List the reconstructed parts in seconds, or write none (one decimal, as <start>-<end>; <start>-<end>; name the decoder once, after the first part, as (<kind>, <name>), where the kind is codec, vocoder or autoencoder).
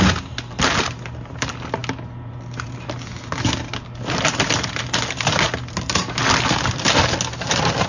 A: none